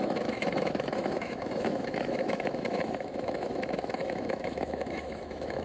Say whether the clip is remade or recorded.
remade